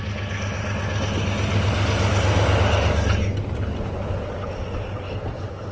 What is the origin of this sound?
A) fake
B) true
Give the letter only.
B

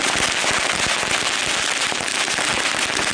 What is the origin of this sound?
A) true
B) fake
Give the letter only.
A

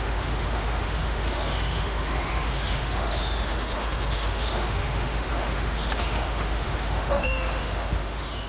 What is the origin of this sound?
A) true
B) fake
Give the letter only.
B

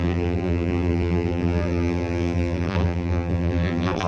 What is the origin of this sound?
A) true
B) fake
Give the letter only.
B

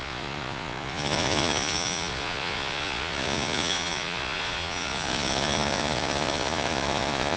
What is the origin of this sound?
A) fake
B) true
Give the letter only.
A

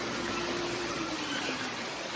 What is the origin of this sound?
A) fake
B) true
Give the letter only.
A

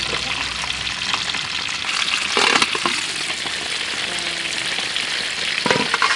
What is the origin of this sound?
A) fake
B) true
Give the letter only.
B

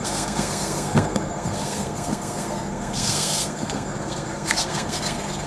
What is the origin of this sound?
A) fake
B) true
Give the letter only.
A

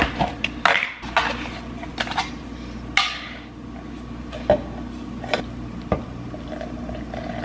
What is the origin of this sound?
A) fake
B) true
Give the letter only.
B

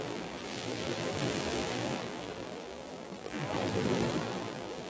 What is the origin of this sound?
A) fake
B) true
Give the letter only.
A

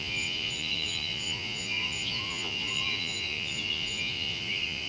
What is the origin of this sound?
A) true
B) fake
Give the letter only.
B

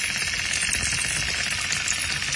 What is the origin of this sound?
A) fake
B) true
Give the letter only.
B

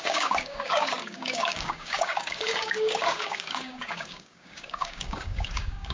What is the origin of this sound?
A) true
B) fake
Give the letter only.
B